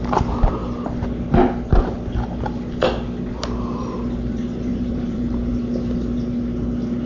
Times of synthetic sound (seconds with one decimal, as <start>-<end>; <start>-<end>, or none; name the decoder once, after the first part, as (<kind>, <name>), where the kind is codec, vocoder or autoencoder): 4.7-5.5 (vocoder, BigVGAN v2)